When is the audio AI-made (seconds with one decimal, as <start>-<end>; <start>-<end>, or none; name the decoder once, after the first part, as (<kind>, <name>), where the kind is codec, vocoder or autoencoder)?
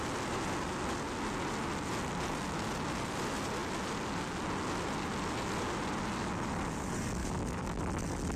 7.2-7.8 (codec, DAC)